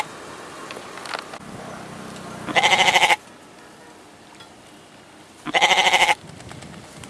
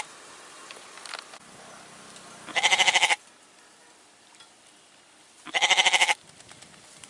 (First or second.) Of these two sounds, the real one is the first